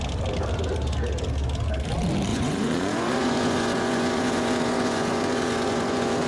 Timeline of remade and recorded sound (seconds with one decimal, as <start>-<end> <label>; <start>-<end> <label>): 0.0-2.3 recorded; 2.3-6.3 remade